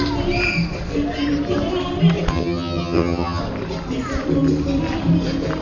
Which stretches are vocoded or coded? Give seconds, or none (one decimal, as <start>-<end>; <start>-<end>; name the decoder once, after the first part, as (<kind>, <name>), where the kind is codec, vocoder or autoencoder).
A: 2.3-3.4 (vocoder, HiFi-GAN)